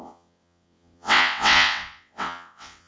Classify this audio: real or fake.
fake